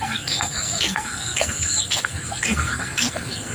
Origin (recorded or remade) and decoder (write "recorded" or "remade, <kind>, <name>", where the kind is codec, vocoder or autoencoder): remade, codec, SNAC